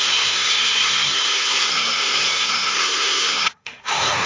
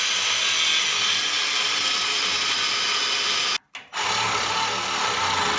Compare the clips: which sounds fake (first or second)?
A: first